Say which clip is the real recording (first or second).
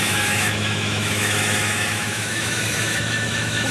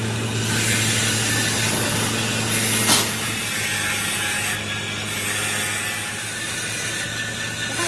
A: second